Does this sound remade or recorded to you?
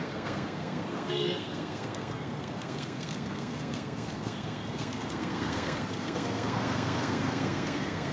remade